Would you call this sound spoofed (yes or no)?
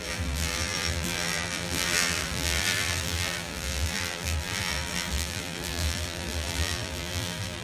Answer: yes